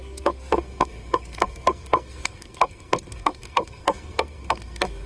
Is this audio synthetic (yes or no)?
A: yes